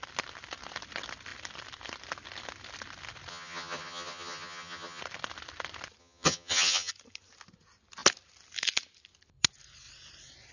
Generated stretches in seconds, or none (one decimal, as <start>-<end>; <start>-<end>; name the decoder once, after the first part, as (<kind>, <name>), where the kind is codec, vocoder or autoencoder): 3.3-5.0 (vocoder, HiFi-GAN); 6.0-6.9